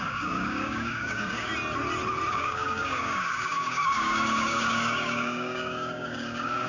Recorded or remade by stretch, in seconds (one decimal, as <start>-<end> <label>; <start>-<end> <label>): 0.0-1.5 remade; 1.5-2.3 recorded; 2.3-6.7 remade